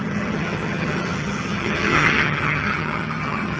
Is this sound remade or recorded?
remade